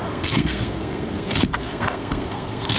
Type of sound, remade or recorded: remade